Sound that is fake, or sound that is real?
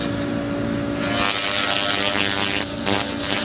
real